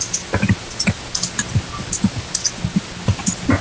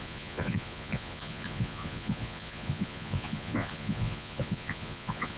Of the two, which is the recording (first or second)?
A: first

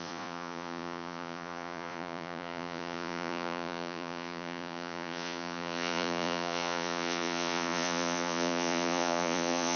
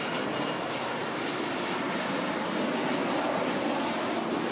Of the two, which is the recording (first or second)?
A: second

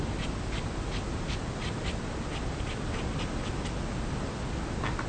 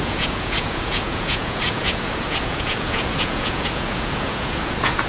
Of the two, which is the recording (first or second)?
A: first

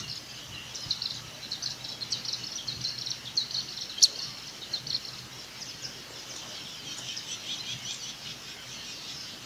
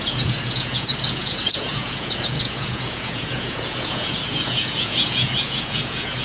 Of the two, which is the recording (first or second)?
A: first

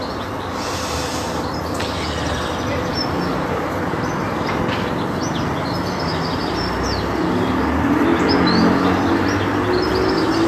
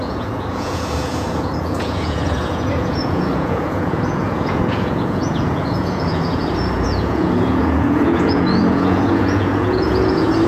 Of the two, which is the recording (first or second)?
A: first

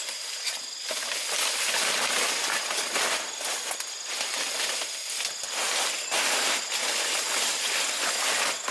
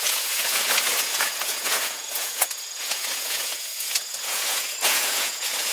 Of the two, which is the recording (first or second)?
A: first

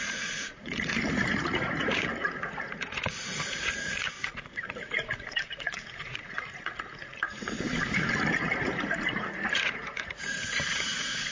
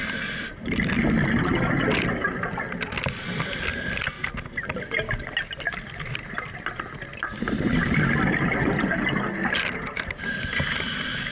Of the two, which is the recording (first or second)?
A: second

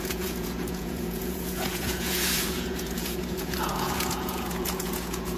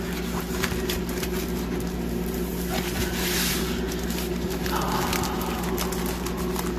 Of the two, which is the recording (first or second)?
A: second